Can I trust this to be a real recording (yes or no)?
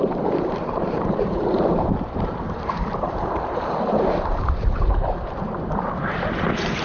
no